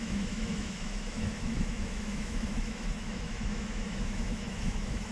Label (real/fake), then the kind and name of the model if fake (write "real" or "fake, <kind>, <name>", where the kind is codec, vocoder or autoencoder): fake, autoencoder, DAC-VAE